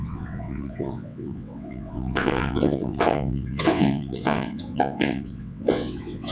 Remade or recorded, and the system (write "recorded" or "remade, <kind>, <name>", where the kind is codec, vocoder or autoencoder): remade, vocoder, WaveNeXt